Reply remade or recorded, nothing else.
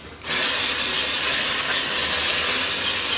recorded